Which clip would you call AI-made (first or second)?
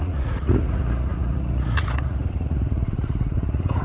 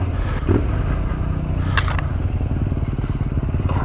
first